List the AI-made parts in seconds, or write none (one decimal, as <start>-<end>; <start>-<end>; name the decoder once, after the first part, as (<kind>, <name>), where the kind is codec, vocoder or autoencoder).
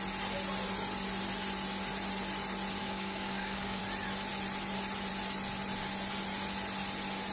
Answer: 2.8-3.8 (codec, DAC)